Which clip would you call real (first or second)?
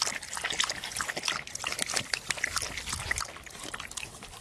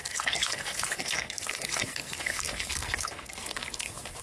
first